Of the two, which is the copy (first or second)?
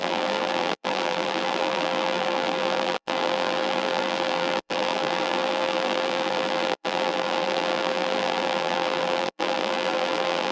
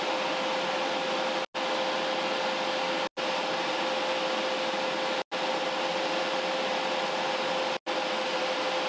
first